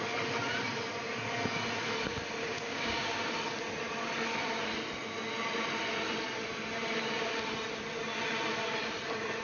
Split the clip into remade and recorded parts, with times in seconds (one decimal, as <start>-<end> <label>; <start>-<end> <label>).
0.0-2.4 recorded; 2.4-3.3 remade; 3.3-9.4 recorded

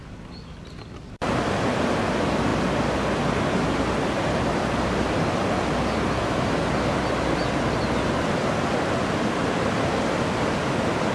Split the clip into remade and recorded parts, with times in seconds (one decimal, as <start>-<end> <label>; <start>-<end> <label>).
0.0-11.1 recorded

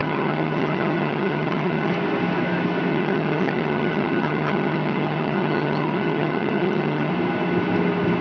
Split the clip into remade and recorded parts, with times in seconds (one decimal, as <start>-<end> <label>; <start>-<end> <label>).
0.0-1.9 remade; 1.9-2.9 recorded; 2.9-7.1 remade; 7.1-8.2 recorded